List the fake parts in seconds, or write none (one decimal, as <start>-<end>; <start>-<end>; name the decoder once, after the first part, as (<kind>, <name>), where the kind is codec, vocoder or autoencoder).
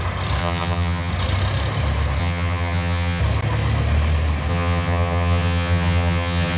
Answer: 0.4-1.1 (vocoder, HiFi-GAN); 2.2-3.2; 4.5-6.6